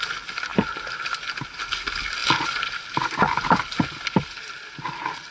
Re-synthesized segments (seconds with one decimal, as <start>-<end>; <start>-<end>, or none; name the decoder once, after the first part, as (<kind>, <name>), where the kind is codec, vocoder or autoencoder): none